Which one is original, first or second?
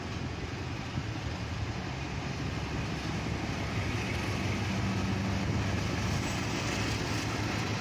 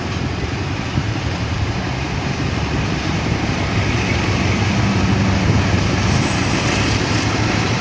first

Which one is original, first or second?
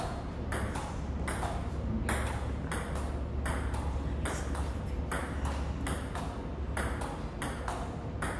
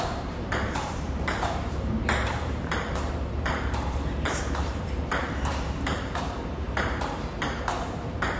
first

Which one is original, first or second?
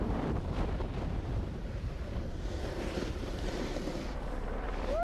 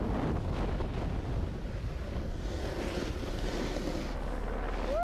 second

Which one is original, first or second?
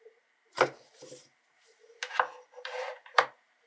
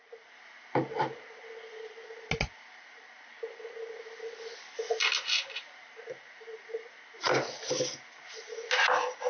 second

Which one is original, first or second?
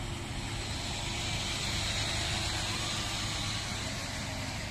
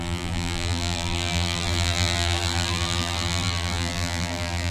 first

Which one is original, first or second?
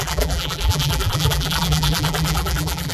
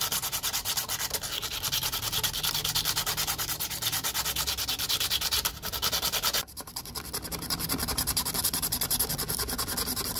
second